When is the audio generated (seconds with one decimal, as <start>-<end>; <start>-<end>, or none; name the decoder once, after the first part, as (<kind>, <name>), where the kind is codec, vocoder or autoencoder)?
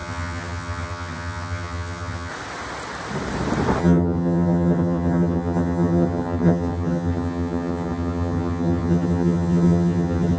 0.0-2.3 (vocoder, HiFi-GAN); 3.8-10.4